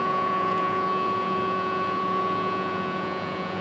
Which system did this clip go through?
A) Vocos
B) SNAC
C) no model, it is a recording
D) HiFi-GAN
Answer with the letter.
A